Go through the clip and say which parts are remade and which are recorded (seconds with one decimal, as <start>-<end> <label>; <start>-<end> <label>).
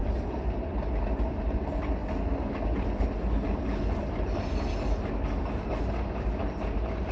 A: 0.0-7.1 recorded